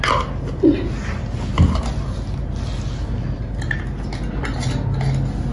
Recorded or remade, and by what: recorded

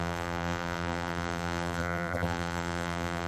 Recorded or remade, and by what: remade, vocoder, BigVGAN v2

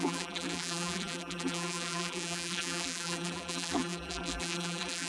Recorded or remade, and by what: remade, vocoder, BigVGAN v2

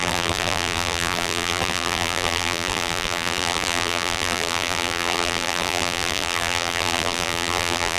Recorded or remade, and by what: remade, vocoder, BigVGAN v2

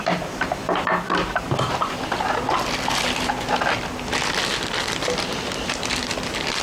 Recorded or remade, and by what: recorded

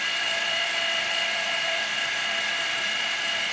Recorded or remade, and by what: remade, vocoder, BigVGAN v2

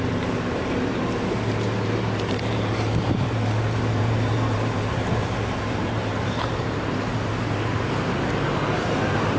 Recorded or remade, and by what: remade, vocoder, BigVGAN v2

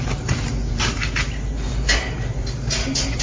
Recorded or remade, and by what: recorded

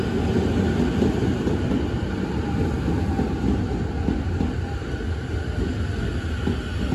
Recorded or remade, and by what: recorded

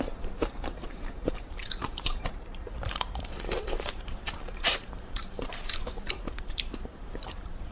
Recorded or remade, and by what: remade, vocoder, BigVGAN v2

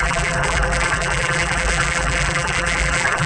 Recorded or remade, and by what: remade, vocoder, BigVGAN v2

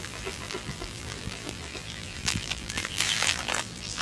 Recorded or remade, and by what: remade, vocoder, BigVGAN v2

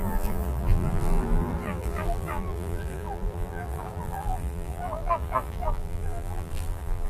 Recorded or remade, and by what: remade, vocoder, BigVGAN v2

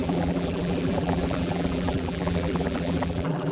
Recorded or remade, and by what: remade, vocoder, BigVGAN v2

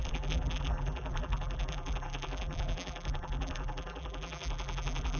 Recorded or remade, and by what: remade, vocoder, BigVGAN v2